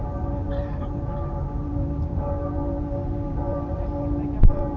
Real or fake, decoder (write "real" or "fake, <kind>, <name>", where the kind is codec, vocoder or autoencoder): fake, vocoder, BigVGAN v2